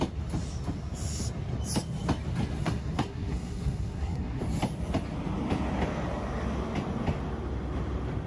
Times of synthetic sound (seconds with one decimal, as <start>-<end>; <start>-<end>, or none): 2.6-4.4